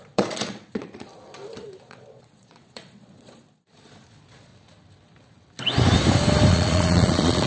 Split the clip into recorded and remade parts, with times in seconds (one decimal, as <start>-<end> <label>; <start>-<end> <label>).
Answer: 0.0-1.1 remade; 1.1-1.8 recorded; 1.8-4.5 remade; 4.5-6.5 recorded; 6.5-7.5 remade